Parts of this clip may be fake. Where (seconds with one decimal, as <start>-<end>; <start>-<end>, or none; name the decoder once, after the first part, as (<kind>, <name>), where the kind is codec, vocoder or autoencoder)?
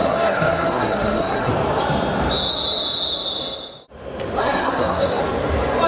0.0-1.5 (codec, SNAC); 4.4-5.2